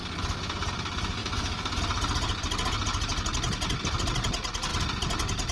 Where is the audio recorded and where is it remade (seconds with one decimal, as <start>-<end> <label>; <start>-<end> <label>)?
0.0-1.2 recorded; 1.2-1.8 remade; 1.8-5.5 recorded